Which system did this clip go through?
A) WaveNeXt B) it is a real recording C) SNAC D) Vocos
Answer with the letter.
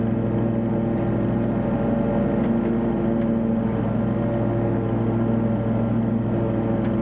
B